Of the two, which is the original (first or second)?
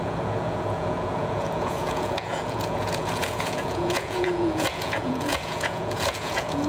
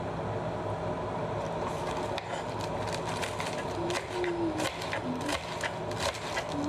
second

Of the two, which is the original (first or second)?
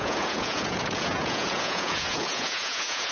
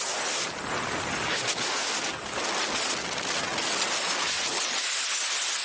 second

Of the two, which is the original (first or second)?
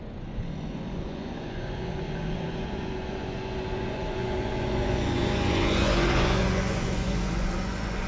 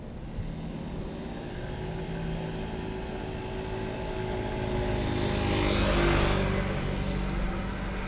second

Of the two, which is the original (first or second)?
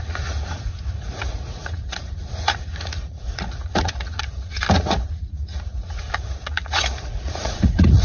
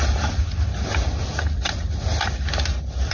second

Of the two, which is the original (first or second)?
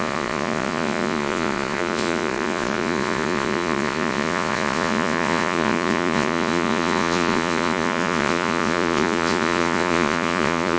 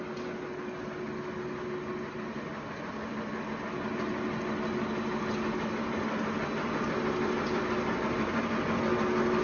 second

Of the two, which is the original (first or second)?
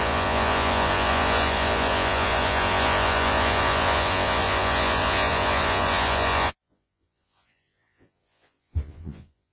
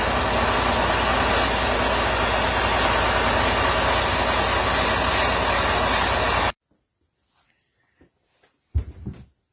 second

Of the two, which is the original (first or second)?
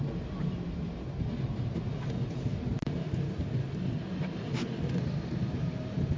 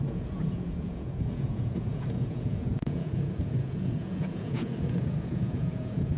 first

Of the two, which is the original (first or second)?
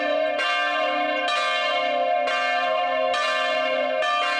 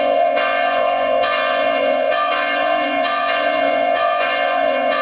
first